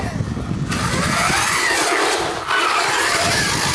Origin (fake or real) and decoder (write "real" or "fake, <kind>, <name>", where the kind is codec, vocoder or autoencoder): real